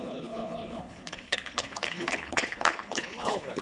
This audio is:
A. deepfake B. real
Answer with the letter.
A